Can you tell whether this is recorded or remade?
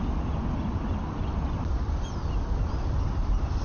recorded